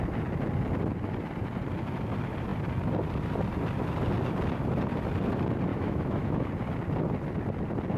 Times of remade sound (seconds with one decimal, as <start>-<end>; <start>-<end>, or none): 5.7-6.5